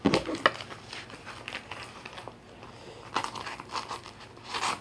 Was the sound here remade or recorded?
recorded